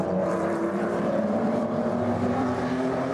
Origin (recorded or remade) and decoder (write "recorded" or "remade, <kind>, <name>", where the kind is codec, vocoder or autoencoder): remade, vocoder, BigVGAN v2